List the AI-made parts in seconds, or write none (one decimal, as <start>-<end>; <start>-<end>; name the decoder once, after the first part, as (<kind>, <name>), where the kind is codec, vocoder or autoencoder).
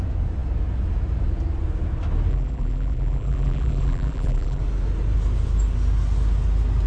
2.3-4.6 (vocoder, BigVGAN v2)